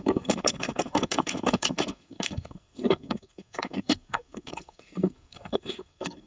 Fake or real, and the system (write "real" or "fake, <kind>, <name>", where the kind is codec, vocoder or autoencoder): fake, codec, SNAC